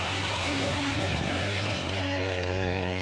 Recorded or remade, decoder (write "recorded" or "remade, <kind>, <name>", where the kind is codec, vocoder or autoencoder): remade, codec, SNAC